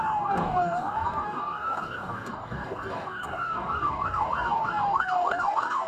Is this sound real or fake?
fake